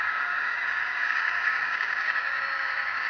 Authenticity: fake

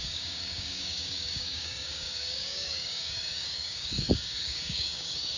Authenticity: fake